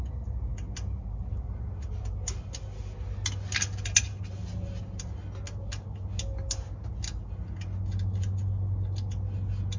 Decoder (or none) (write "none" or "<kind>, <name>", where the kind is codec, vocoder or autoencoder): none